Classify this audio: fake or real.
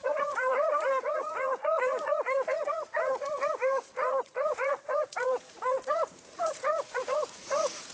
fake